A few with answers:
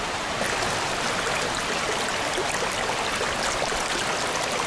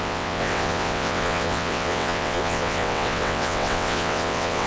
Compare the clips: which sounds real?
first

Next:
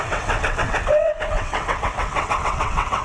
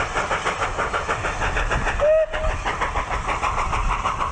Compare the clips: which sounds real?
second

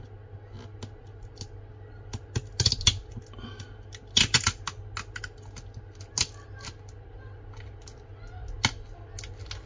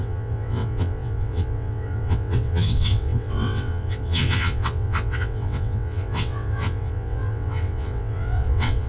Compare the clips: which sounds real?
first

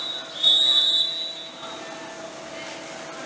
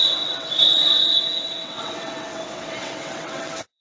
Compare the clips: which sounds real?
first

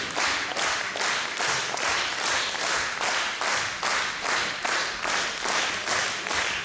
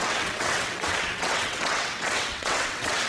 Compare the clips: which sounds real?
first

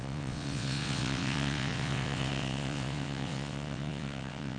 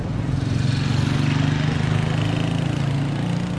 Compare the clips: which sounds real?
second